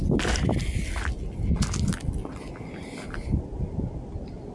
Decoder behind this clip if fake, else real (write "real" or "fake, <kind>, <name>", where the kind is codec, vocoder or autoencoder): real